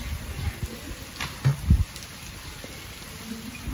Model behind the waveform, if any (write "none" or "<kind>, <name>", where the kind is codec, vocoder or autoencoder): none